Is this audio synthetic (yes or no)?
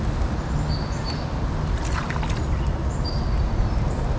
no